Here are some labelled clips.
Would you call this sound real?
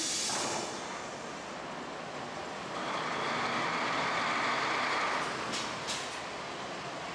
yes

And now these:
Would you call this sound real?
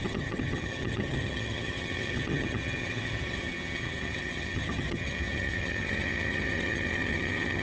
no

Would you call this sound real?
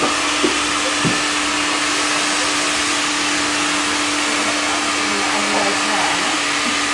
yes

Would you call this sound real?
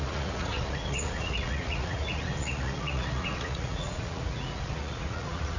no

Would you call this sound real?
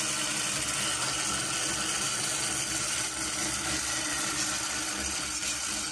yes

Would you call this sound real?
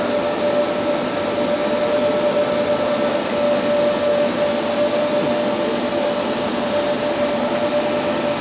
yes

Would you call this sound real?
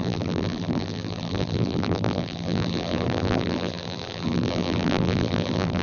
no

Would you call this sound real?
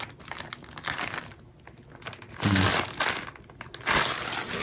yes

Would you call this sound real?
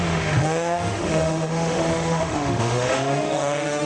no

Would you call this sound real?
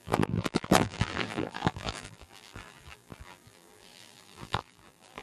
no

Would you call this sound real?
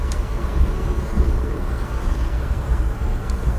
no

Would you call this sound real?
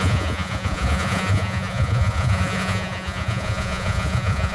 no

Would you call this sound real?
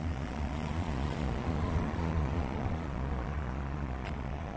no